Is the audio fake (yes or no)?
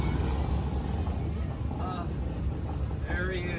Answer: no